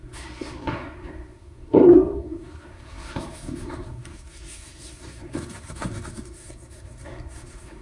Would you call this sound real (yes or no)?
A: no